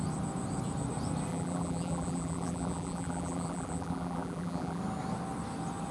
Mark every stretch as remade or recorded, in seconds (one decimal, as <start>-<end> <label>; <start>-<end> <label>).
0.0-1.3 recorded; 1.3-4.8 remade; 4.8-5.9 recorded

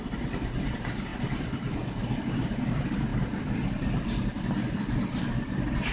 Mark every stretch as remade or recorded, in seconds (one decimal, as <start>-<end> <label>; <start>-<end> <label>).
0.0-5.9 recorded

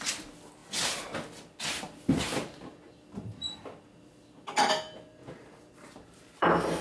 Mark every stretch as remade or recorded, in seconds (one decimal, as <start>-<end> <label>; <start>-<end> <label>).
0.0-5.2 recorded; 5.2-6.8 remade